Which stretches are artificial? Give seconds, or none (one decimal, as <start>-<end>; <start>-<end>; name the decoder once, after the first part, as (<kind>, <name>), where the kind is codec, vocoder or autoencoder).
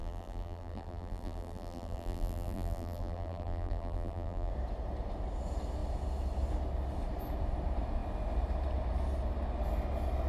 0.0-4.5 (vocoder, BigVGAN v2)